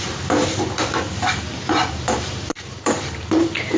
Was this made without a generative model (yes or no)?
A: no